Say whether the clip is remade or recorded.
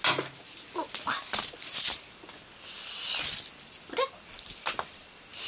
recorded